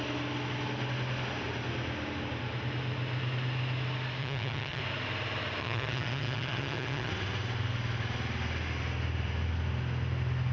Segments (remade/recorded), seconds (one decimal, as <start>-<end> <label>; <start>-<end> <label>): 0.0-4.2 recorded; 4.2-4.8 remade; 4.8-5.6 recorded; 5.6-7.1 remade; 7.1-10.5 recorded